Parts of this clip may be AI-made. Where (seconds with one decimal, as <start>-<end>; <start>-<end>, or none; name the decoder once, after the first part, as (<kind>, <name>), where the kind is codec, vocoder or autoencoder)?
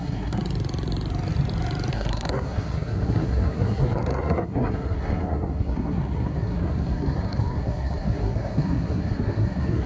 0.0-0.4 (codec, SNAC); 1.9-9.9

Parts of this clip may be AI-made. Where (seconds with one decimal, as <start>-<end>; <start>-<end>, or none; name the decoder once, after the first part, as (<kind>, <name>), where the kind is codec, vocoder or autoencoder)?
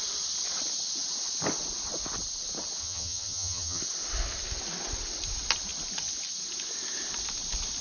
2.8-3.8 (vocoder, HiFi-GAN)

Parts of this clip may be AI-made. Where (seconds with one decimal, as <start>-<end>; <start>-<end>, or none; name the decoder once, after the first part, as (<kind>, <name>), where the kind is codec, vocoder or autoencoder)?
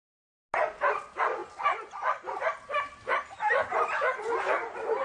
none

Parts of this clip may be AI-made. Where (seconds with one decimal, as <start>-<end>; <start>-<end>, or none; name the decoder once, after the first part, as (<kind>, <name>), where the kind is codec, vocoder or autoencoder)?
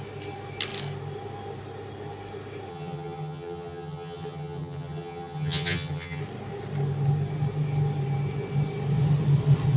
2.7-6.2 (vocoder, HiFi-GAN)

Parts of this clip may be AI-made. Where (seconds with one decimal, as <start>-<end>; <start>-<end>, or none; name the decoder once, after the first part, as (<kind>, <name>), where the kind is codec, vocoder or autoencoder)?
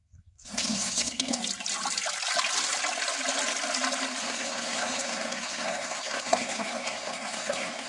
0.0-1.4 (codec, SNAC); 4.2-7.9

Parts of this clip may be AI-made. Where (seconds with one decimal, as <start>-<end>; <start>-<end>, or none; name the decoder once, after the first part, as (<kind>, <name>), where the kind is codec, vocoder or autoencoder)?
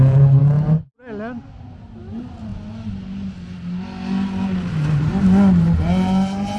none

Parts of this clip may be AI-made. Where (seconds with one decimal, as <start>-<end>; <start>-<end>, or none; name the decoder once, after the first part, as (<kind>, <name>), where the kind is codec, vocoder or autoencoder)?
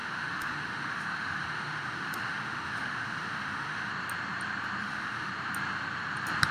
0.0-3.9 (autoencoder, DAC-VAE); 4.8-5.3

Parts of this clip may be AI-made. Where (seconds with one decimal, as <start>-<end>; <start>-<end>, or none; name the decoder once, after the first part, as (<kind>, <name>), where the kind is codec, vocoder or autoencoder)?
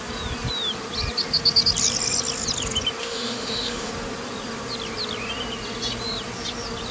3.0-3.9 (autoencoder, DAC-VAE)